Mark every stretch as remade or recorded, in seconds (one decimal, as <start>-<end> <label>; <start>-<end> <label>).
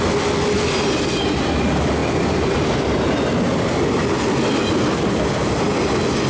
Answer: 0.0-6.3 recorded